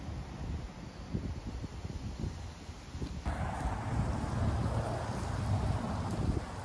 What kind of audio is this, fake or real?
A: real